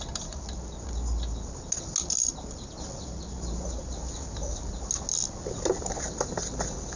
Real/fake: real